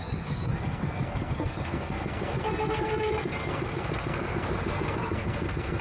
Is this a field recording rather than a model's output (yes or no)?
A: no